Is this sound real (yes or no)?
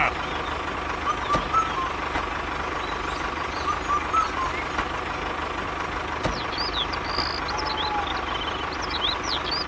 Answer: yes